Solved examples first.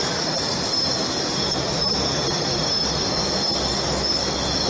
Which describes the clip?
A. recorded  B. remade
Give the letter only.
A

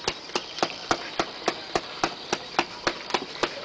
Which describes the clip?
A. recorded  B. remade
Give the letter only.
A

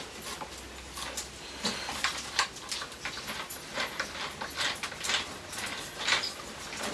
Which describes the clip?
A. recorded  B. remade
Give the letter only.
A